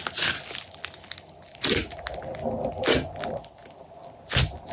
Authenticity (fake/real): real